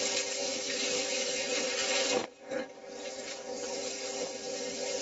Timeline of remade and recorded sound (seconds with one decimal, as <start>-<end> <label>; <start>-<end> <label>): 0.0-0.5 recorded; 0.5-1.7 remade; 1.7-5.0 recorded